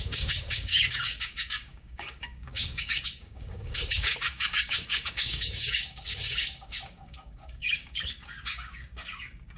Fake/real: fake